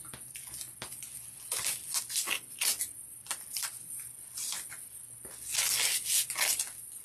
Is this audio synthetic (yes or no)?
no